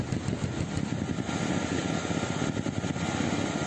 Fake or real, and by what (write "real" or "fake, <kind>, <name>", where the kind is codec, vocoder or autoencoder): real